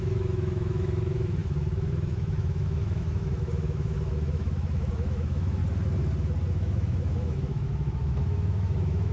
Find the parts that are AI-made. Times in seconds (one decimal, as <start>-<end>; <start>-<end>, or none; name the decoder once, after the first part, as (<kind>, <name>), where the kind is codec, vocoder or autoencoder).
0.0-5.6 (autoencoder, DAC-VAE); 6.5-9.1